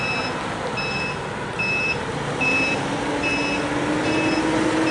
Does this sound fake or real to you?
real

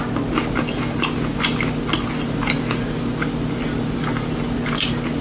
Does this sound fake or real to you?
real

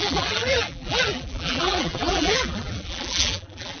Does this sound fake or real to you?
fake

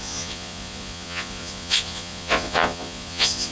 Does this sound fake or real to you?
fake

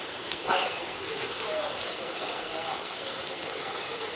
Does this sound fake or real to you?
fake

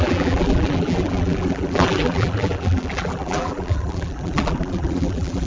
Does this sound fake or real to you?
fake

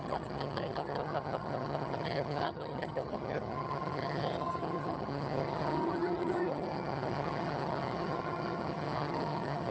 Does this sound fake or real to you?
fake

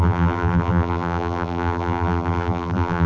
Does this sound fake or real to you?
fake